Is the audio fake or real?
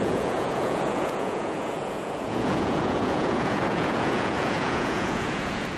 fake